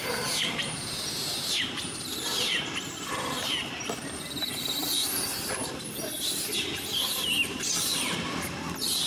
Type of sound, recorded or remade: remade